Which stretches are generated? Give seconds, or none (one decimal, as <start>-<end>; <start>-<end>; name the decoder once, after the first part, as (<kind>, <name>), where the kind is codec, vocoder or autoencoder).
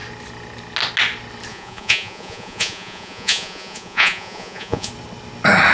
1.5-4.9 (vocoder, Vocos)